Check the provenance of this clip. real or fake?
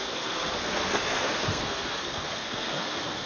fake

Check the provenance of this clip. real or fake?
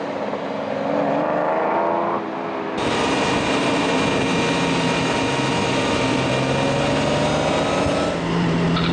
real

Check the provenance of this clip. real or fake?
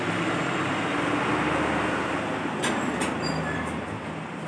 real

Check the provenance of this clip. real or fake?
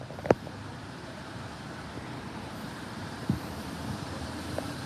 fake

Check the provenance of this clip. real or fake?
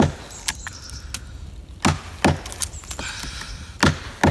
real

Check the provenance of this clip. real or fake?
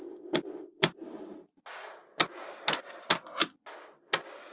real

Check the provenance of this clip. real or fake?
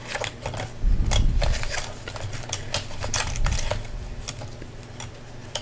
real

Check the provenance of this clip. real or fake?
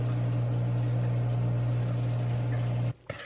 real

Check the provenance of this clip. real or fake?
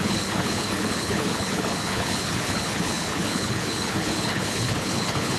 fake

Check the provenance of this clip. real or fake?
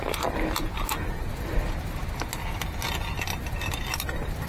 real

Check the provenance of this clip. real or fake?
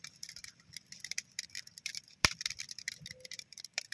fake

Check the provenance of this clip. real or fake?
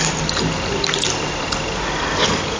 real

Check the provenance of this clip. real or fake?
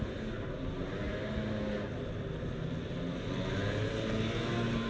real